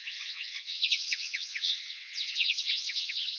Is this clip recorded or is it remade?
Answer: remade